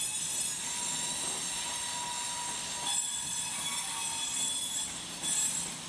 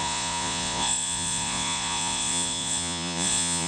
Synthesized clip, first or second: second